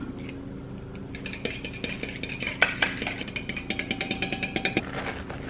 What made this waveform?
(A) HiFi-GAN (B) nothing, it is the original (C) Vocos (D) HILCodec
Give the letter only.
B